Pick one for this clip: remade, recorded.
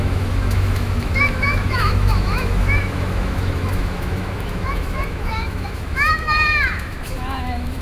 remade